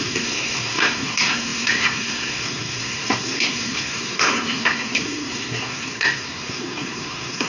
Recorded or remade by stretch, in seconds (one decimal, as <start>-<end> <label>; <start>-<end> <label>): 0.0-7.5 remade